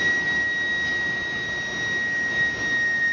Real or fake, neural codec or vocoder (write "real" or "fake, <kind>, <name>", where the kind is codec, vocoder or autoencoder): real